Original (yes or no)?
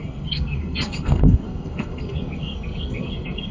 no